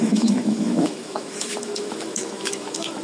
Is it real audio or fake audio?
fake